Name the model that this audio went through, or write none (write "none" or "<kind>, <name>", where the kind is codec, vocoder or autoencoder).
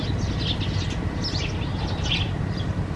none